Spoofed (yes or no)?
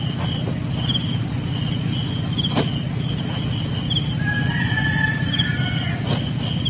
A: no